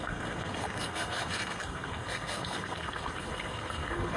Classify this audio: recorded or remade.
remade